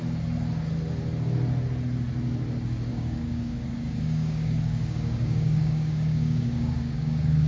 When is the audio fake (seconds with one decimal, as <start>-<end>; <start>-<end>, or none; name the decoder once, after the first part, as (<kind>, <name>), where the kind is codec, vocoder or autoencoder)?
2.9-7.5 (codec, DAC)